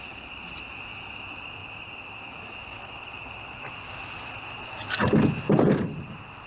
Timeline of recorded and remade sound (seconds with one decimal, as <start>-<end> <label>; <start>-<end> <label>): 0.0-6.5 recorded